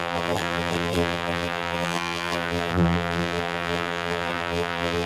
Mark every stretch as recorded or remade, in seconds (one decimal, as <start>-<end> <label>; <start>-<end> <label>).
0.0-5.1 remade